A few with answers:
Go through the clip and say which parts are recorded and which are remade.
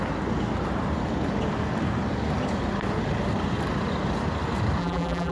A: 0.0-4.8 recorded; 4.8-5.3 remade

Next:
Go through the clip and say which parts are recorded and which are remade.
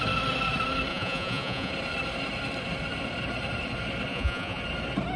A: 0.0-0.9 recorded; 0.9-1.7 remade; 1.7-4.1 recorded; 4.1-4.6 remade; 4.6-5.2 recorded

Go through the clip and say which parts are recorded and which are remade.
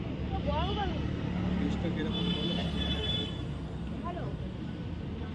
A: 0.0-0.8 recorded; 0.8-1.4 remade; 1.4-2.6 recorded; 2.6-4.4 remade; 4.4-5.3 recorded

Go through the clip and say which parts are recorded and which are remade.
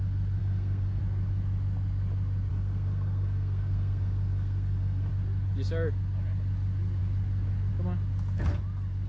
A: 0.0-0.4 recorded; 0.4-1.0 remade; 1.0-2.5 recorded; 2.5-5.1 remade; 5.1-9.1 recorded